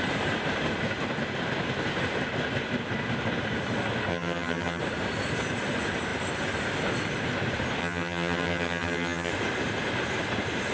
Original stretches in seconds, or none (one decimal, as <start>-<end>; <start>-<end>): 0.0-4.1; 4.8-7.8; 9.3-10.7